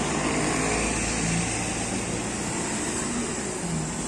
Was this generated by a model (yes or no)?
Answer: no